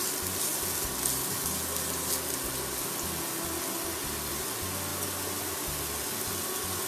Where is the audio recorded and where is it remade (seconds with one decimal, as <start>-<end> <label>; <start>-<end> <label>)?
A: 0.0-6.9 recorded